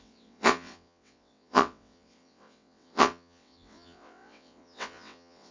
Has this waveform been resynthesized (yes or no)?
yes